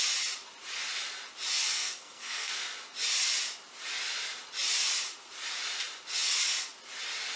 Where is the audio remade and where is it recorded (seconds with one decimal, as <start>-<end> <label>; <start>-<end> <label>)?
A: 0.0-1.6 recorded; 1.6-2.6 remade; 2.6-7.4 recorded